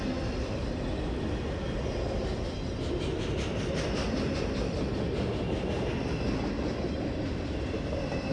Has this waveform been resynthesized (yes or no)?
yes